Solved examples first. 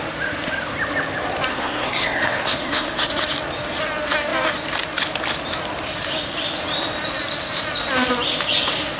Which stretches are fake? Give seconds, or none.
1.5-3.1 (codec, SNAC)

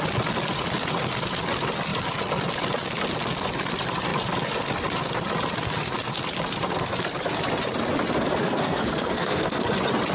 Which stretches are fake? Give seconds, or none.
8.4-9.7 (codec, SNAC)

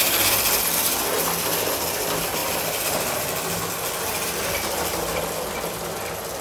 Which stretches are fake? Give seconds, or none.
none

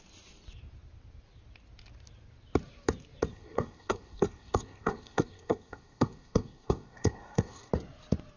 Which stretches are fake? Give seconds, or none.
3.3-7.7 (codec, SNAC)